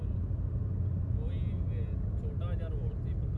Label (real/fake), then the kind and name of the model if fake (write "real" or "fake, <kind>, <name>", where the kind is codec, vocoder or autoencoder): real